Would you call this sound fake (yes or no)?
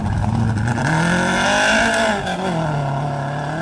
no